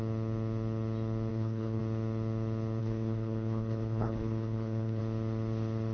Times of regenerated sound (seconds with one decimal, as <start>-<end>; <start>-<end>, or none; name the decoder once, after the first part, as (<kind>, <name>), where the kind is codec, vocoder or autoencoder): 1.3-1.8 (codec, HILCodec); 2.8-5.0